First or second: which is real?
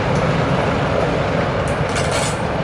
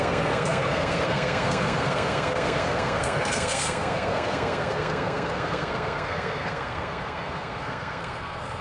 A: first